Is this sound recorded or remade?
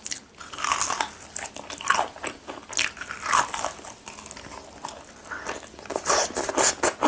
recorded